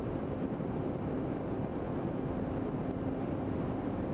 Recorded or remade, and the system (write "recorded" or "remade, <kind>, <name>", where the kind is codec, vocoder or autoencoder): recorded